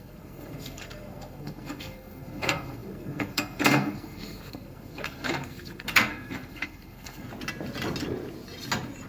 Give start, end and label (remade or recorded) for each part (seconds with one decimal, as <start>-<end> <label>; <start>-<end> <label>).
0.0-7.3 remade; 7.3-9.1 recorded